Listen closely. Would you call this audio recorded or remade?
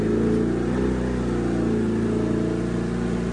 recorded